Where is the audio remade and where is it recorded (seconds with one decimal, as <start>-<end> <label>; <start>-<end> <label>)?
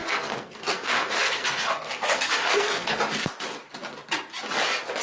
0.0-3.0 remade; 3.0-5.0 recorded